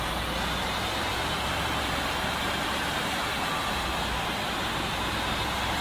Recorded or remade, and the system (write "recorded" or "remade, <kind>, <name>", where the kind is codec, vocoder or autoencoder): remade, vocoder, BigVGAN v2